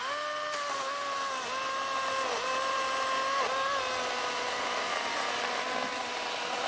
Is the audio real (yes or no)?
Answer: yes